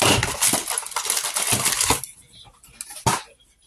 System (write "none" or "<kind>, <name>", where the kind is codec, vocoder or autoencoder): none